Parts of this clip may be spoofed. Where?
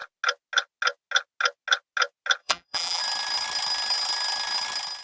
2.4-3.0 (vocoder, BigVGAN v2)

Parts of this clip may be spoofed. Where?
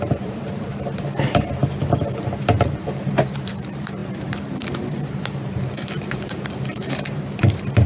0.0-1.6 (vocoder, BigVGAN v2); 2.6-7.9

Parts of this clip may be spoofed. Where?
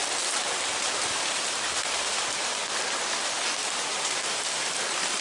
1.3-2.6 (vocoder, BigVGAN v2); 3.7-5.2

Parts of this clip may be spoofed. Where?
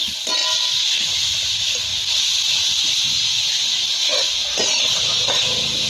0.4-1.5 (vocoder, BigVGAN v2); 1.9-3.5; 4.1-4.8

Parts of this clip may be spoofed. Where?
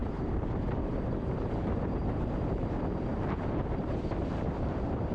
0.0-5.1 (vocoder, BigVGAN v2)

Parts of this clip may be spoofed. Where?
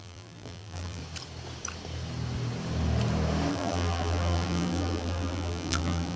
0.0-1.0 (vocoder, BigVGAN v2); 3.5-6.2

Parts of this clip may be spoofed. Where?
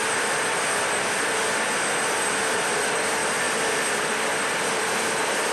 none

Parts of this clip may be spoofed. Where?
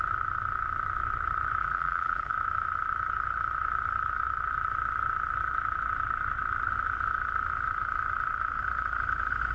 1.6-2.3 (vocoder, BigVGAN v2)